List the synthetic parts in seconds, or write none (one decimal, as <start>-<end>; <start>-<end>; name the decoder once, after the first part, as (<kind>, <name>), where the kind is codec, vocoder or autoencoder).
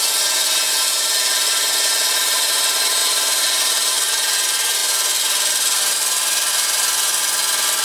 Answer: 3.0-3.6 (vocoder, BigVGAN v2)